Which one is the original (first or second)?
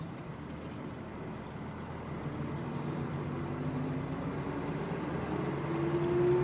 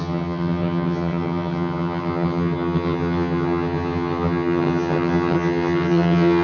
first